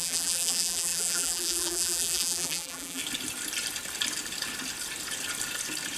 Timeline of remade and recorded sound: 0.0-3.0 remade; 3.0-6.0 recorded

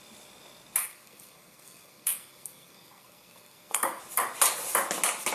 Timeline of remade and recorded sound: 0.0-0.8 recorded; 0.8-4.0 remade; 4.0-5.3 recorded

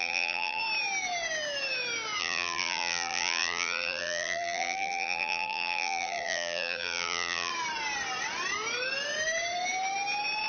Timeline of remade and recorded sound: 0.0-0.6 remade; 0.6-2.2 recorded; 2.2-7.5 remade; 7.5-10.5 recorded

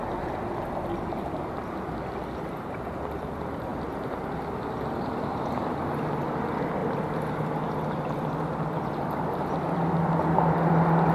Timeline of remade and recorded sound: 0.0-3.7 recorded; 3.7-6.0 remade; 6.0-6.8 recorded; 6.8-7.4 remade; 7.4-11.1 recorded

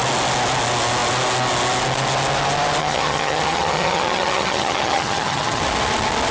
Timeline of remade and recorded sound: 0.0-2.8 recorded; 2.8-5.6 remade; 5.6-6.3 recorded

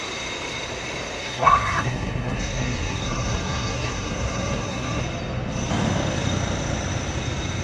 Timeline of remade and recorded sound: 0.0-1.2 recorded; 1.2-5.0 remade; 5.0-7.6 recorded

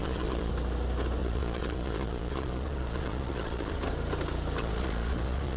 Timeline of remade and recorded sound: 0.0-0.5 remade; 0.5-1.2 recorded; 1.2-3.7 remade; 3.7-4.6 recorded; 4.6-5.6 remade

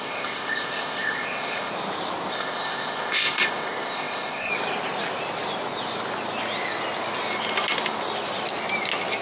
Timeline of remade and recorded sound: 0.0-1.7 remade; 1.7-2.3 recorded; 2.3-4.5 remade; 4.5-9.2 recorded